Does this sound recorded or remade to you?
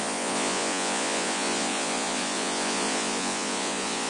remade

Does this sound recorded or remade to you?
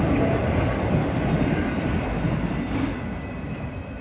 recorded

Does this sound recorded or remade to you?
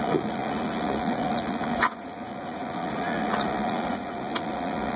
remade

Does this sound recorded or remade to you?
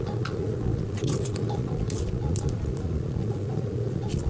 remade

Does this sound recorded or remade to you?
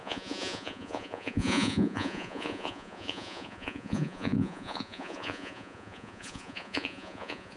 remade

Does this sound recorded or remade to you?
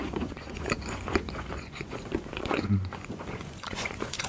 remade